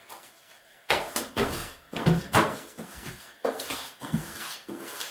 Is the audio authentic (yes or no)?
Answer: no